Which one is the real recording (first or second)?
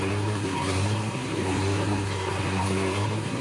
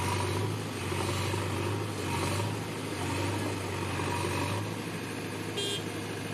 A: second